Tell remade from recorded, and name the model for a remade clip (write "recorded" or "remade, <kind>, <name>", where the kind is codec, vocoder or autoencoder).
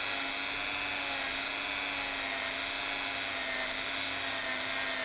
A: recorded